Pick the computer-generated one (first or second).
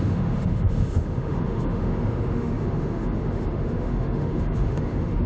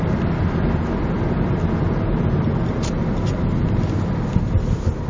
first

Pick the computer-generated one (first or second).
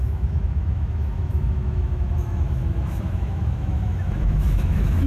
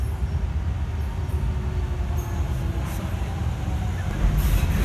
first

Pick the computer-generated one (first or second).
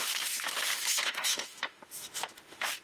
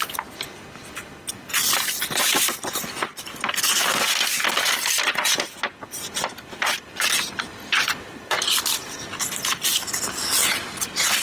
first